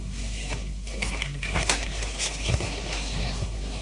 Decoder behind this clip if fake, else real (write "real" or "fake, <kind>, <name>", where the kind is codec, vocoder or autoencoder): fake, codec, SNAC